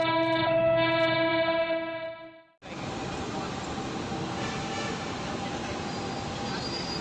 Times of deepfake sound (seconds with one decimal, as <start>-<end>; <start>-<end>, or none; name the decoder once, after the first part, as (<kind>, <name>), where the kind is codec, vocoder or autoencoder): none